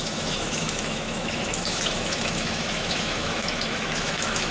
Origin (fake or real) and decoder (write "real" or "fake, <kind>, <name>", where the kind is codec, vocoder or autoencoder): fake, autoencoder, DAC-VAE